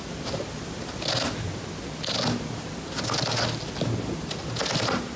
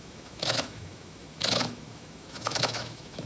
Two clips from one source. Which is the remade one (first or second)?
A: second